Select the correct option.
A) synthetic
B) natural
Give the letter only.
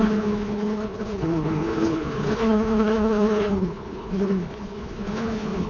A